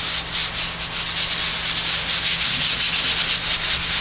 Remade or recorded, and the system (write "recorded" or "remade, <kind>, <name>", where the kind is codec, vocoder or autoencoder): recorded